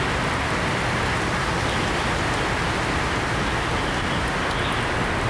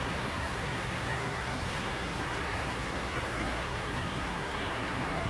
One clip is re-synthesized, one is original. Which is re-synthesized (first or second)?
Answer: second